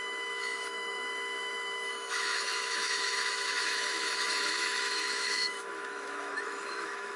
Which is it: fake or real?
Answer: fake